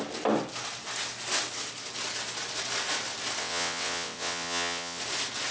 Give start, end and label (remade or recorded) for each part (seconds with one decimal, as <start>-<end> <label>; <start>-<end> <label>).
0.0-3.4 recorded; 3.4-5.0 remade; 5.0-5.5 recorded